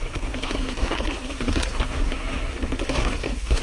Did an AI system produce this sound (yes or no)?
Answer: yes